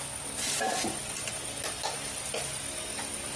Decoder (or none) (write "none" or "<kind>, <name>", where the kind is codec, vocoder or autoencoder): none